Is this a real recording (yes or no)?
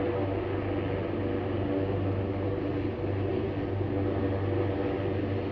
yes